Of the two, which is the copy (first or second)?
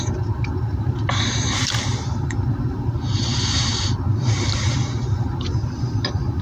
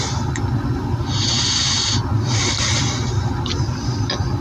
first